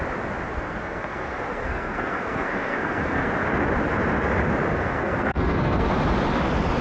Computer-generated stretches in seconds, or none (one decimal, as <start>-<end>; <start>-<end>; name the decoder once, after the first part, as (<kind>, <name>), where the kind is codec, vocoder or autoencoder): 0.5-3.3 (codec, SNAC); 4.7-5.9